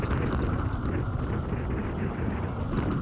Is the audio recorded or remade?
recorded